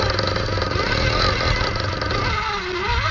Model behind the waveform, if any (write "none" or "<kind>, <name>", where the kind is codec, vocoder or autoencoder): none